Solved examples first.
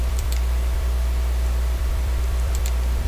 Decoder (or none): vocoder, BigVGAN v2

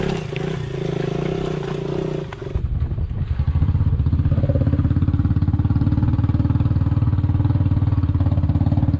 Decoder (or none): none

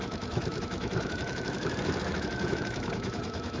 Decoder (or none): autoencoder, DAC-VAE